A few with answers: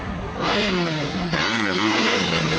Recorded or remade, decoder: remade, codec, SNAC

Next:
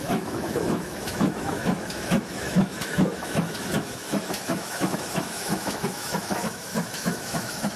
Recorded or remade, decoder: remade, autoencoder, DAC-VAE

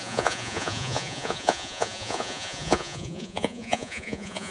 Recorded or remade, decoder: remade, vocoder, Vocos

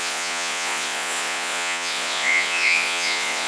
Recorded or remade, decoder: remade, vocoder, Vocos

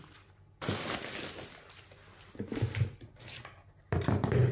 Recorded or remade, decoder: recorded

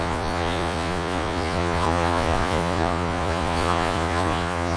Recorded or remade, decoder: remade, vocoder, Vocos